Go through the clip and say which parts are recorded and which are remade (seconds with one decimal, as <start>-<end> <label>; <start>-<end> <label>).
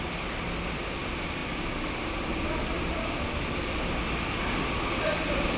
0.0-5.6 recorded